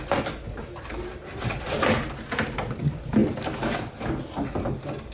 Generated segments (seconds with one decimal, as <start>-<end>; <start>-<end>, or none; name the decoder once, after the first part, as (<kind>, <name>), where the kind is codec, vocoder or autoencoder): 1.1-1.8 (vocoder, BigVGAN v2)